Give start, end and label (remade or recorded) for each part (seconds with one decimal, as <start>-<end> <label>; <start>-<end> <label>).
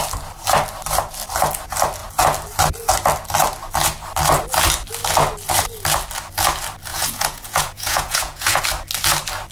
0.0-6.9 recorded; 6.9-8.6 remade; 8.6-9.5 recorded